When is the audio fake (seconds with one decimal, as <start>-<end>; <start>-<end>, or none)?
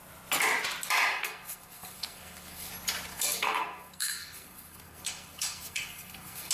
1.2-2.7; 3.1-6.5